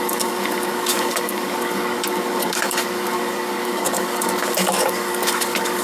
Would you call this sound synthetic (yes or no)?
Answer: yes